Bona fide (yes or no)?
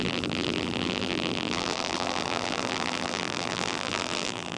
no